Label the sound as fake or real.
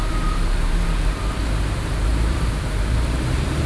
fake